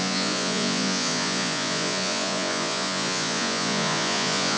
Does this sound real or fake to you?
fake